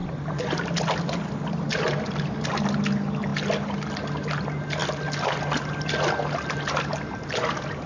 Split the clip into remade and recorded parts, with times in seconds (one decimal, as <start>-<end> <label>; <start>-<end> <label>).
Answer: 0.0-7.9 recorded